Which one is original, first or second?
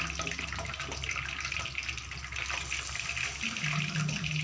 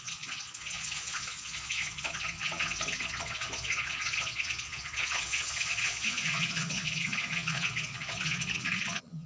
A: first